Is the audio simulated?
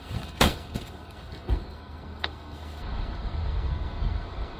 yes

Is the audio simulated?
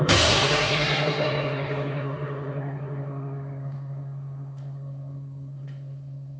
yes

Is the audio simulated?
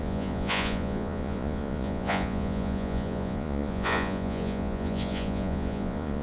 yes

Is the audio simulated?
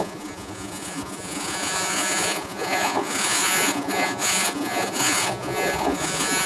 yes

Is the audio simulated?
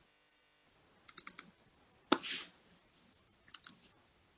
no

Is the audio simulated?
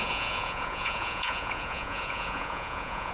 yes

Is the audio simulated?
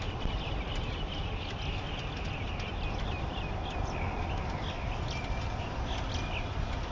no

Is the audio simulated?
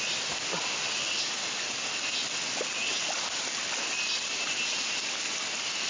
no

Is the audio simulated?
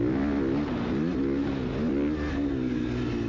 no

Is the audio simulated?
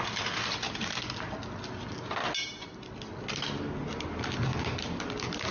no